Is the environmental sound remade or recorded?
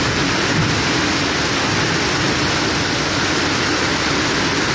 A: recorded